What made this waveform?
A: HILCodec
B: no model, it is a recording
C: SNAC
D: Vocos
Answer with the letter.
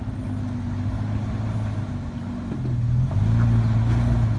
B